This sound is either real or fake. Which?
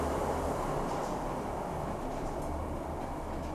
real